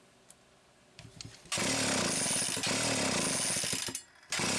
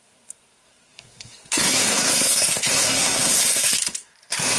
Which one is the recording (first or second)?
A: first